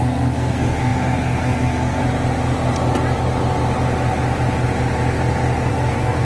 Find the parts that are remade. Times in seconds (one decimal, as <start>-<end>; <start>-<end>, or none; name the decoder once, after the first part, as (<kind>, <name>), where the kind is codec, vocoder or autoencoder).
0.0-2.0 (codec, SNAC); 5.7-6.2